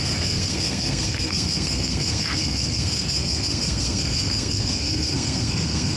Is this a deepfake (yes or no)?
yes